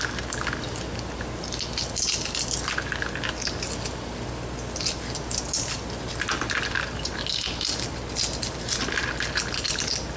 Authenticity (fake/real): real